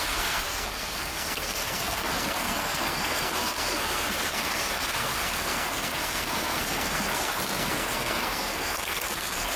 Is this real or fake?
fake